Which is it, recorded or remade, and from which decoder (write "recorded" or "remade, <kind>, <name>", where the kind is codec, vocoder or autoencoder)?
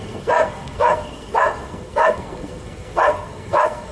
remade, codec, SNAC